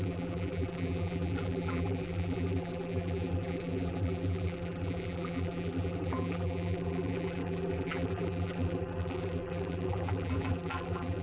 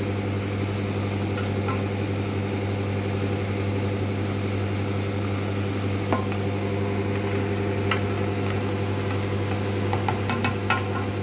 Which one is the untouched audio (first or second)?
second